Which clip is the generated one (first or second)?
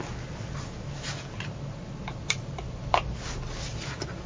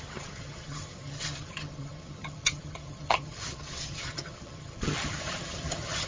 second